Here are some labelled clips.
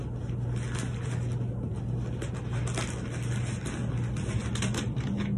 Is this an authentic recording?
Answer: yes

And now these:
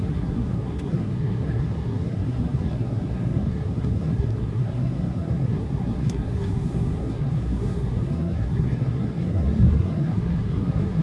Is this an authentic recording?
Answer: no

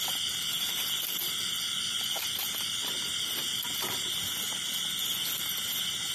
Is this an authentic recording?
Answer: yes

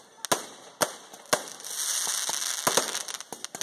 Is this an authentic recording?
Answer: yes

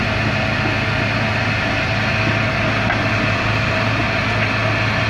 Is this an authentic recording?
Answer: yes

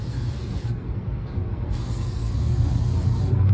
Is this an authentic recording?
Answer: no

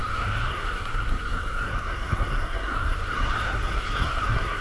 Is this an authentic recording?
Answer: no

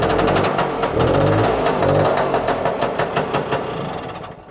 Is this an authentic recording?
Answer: yes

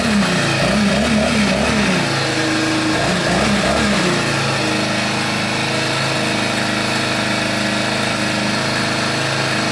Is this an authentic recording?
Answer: yes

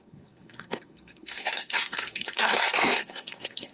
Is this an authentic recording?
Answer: no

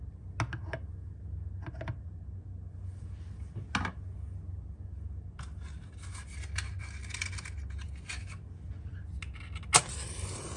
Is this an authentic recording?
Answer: yes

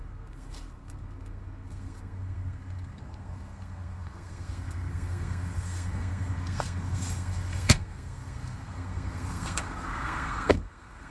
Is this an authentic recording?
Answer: no